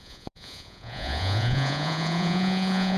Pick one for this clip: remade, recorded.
remade